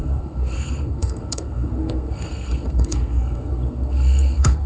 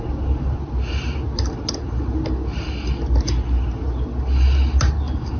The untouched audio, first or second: second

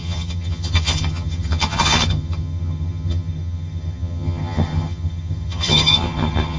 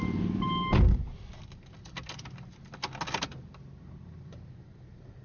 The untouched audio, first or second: second